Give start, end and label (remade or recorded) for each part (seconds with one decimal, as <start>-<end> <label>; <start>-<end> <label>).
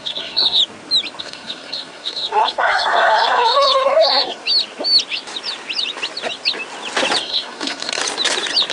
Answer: 0.0-0.6 remade; 0.6-1.2 recorded; 1.2-4.4 remade; 4.4-7.2 recorded; 7.2-8.0 remade; 8.0-8.7 recorded